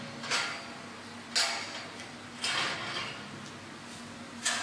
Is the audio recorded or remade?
recorded